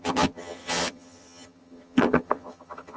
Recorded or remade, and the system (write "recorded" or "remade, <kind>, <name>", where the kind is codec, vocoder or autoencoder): remade, vocoder, HiFi-GAN